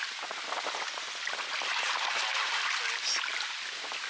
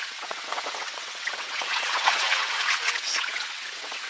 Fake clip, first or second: second